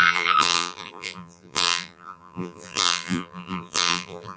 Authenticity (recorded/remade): remade